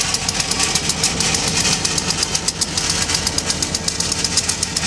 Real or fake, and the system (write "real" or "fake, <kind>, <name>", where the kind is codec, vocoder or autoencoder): real